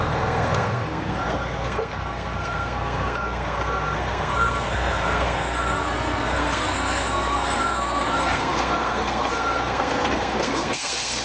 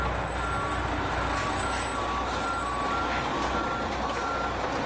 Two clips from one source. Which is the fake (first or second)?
first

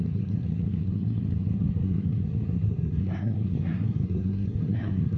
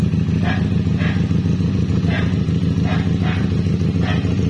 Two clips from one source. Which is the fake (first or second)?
first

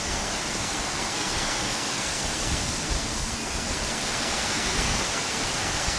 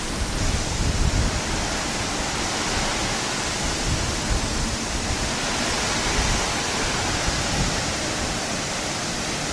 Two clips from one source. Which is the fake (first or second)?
first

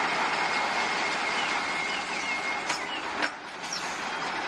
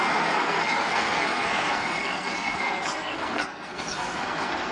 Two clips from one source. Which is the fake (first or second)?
second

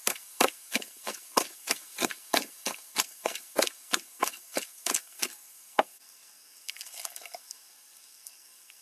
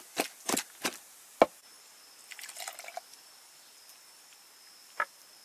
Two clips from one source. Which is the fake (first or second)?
first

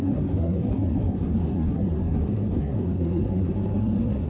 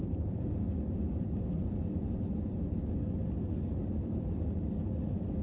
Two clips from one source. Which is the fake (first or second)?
first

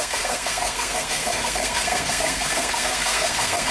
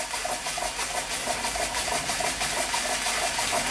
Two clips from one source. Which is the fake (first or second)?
first